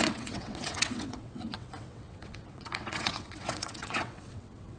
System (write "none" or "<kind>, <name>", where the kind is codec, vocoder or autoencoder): vocoder, WaveNeXt